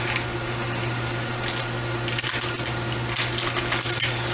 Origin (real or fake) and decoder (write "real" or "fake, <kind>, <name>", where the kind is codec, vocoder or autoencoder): real